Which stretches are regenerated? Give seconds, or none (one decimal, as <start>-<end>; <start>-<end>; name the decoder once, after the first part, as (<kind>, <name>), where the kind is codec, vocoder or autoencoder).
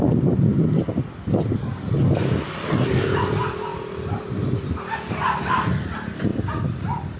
3.7-4.7 (vocoder, BigVGAN v2); 6.3-7.2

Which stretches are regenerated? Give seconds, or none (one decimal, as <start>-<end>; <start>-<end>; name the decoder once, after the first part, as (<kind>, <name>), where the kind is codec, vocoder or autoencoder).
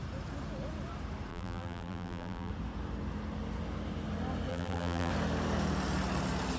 1.3-2.5 (vocoder, BigVGAN v2); 4.5-5.1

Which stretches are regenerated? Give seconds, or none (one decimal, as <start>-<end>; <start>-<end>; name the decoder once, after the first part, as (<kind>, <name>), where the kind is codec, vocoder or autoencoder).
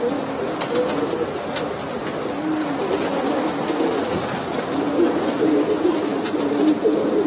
none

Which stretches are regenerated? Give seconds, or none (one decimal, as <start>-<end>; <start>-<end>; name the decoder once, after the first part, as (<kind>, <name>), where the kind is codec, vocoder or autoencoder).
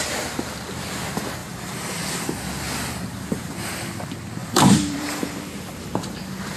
1.4-2.2 (vocoder, BigVGAN v2); 4.4-5.9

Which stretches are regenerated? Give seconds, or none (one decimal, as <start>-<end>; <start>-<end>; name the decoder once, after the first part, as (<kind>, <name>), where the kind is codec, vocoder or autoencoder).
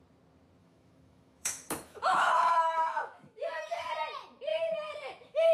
0.6-3.9 (autoencoder, DAC-VAE); 4.5-5.5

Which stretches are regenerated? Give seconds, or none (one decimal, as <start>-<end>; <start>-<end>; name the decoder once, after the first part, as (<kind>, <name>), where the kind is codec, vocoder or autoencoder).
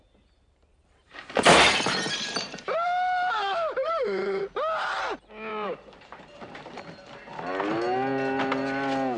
0.7-3.4 (vocoder, BigVGAN v2); 3.8-4.4; 5.5-6.8